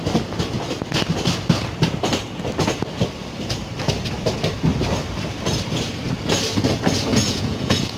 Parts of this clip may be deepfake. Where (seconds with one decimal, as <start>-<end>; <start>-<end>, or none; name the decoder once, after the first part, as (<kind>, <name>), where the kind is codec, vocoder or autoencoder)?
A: 7.1-8.0 (vocoder, Vocos)